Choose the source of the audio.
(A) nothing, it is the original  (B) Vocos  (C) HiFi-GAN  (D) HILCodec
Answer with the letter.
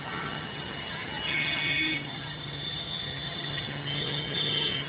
C